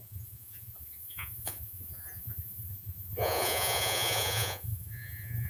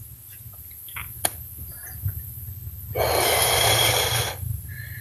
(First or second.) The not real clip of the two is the first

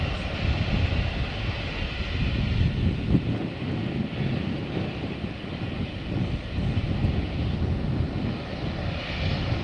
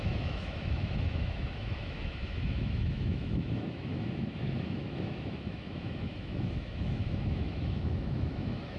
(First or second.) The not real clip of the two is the second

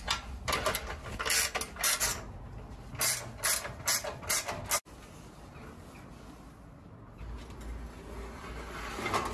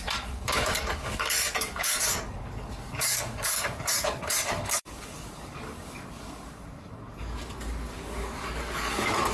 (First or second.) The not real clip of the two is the second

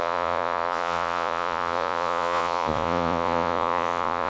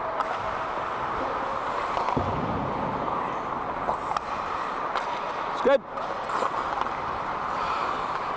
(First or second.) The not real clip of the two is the first